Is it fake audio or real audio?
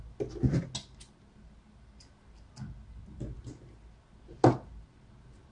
real